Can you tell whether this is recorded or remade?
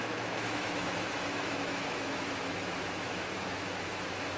remade